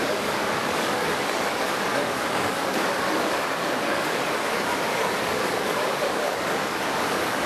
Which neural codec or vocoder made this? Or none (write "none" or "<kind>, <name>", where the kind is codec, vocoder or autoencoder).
codec, DAC